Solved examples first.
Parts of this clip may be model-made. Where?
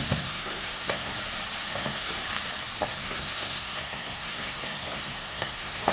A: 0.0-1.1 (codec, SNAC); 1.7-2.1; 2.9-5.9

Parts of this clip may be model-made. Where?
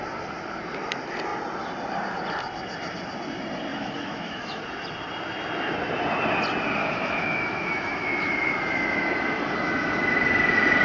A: 3.7-4.6 (autoencoder, DAC-VAE); 6.8-8.5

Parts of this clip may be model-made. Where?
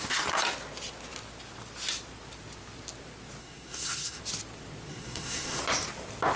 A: 3.4-4.2 (codec, SNAC); 4.9-5.6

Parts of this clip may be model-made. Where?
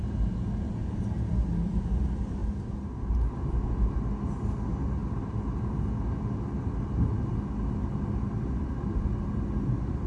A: 2.4-3.9 (vocoder, BigVGAN v2)